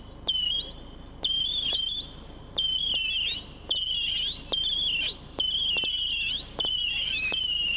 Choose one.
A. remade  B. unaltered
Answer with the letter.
B